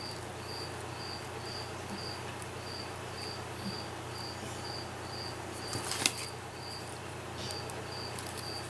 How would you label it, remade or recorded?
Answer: recorded